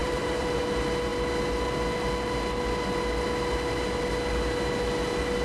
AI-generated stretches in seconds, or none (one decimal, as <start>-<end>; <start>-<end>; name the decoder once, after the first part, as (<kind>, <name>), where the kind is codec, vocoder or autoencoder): 0.0-0.6 (vocoder, BigVGAN v2)